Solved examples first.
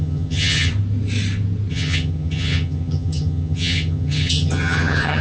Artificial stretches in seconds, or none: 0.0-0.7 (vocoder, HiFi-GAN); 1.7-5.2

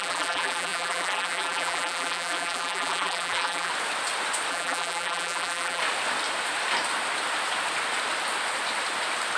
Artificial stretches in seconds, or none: 0.0-3.7 (vocoder, BigVGAN v2); 4.5-5.8

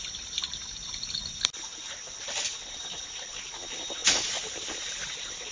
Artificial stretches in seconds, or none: none

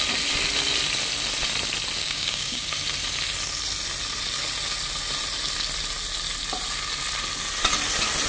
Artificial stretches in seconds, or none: 2.0-2.7 (codec, DAC)

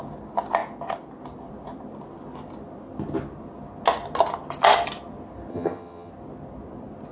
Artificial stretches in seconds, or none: 5.5-6.1 (vocoder, HiFi-GAN)